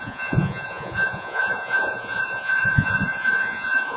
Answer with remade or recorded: remade